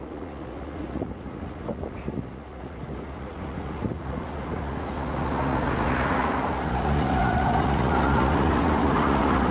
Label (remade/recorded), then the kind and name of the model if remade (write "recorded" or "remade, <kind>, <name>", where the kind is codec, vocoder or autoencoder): remade, vocoder, Vocos